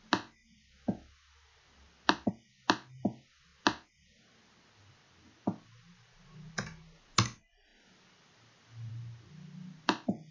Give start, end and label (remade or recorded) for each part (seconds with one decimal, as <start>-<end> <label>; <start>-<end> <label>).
0.0-10.3 recorded